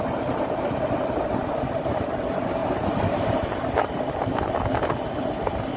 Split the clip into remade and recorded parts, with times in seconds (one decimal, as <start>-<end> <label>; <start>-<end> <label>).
0.0-5.8 recorded